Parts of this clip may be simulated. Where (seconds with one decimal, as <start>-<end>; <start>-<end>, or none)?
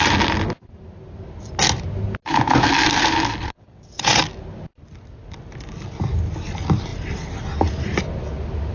3.4-4.2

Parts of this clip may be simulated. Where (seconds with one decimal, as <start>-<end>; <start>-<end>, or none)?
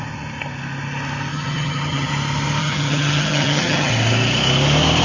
1.3-2.1; 2.6-3.9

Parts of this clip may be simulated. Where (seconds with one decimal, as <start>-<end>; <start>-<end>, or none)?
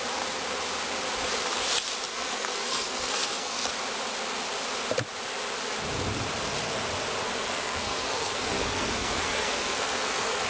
2.1-3.7; 7.2-10.5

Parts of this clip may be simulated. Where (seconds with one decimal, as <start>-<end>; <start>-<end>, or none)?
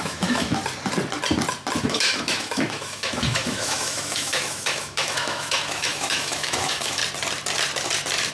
0.0-0.6; 1.8-7.0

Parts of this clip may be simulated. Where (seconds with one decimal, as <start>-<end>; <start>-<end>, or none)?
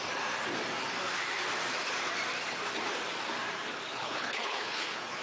3.9-5.2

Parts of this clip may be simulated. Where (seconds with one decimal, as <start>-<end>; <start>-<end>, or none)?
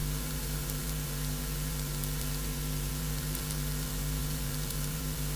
0.0-5.4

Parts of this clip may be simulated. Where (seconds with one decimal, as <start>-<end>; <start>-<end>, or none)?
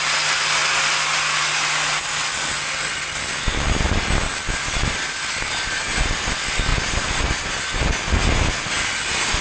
none